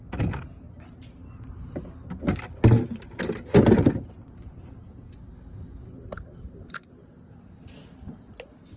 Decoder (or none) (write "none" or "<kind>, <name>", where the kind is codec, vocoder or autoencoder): none